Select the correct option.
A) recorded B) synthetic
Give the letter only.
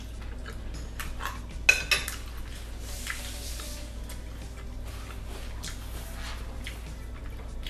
A